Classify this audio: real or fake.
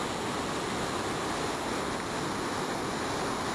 real